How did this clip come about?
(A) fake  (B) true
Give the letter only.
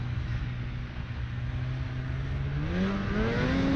B